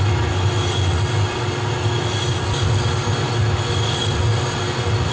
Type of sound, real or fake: real